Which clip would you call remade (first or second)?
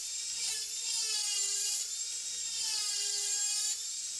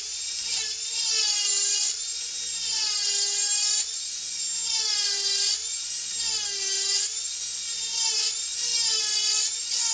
first